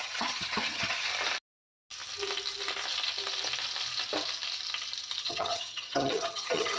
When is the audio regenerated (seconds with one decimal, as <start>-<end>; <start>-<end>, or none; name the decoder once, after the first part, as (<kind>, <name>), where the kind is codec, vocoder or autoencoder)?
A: 0.0-1.1 (vocoder, HiFi-GAN); 5.2-6.8